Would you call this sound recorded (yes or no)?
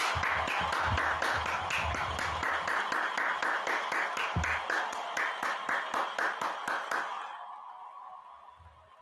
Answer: yes